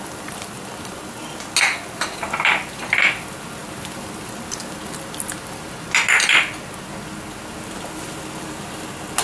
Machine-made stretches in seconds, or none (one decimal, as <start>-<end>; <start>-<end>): 3.6-4.6